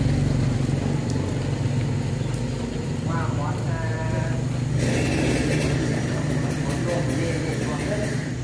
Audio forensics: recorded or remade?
recorded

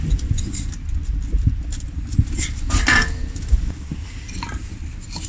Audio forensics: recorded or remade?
recorded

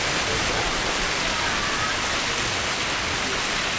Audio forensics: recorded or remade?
recorded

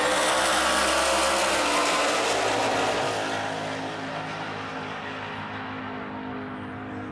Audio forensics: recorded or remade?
recorded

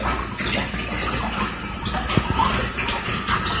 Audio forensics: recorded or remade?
remade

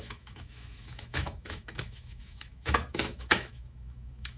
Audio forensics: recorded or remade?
remade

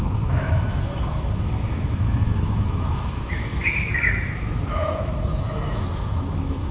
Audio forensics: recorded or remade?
remade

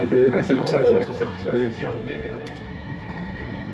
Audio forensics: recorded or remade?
remade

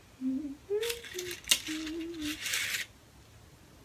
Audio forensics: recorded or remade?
recorded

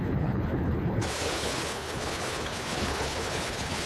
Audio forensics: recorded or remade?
remade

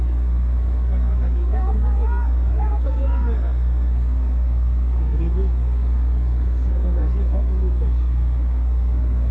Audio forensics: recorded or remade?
remade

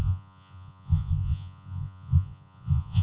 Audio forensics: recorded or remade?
remade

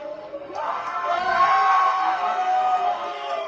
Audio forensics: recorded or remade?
remade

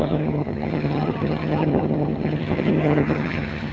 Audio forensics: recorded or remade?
remade